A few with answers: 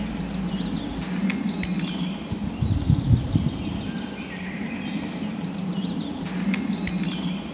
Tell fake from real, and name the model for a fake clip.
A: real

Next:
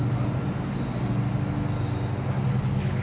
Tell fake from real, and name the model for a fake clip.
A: real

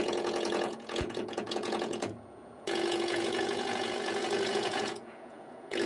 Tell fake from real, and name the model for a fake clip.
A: fake, vocoder, Vocos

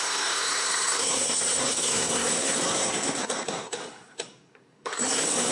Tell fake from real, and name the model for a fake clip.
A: fake, codec, SNAC